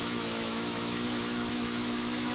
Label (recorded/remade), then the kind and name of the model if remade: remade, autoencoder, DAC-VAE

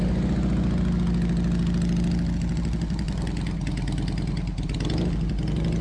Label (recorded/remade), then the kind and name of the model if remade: recorded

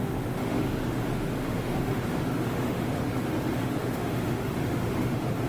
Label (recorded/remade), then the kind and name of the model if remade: remade, autoencoder, DAC-VAE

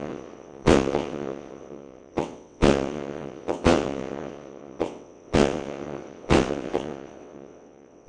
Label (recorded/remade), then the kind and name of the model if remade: remade, vocoder, WaveNeXt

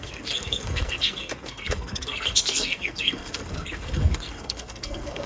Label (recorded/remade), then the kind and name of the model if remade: remade, codec, SNAC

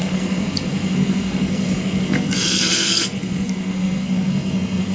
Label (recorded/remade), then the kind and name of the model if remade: remade, codec, SNAC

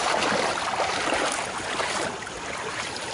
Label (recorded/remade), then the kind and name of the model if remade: recorded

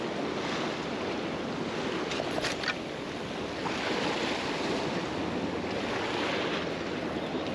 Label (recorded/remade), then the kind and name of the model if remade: recorded